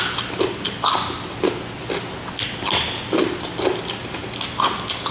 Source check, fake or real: real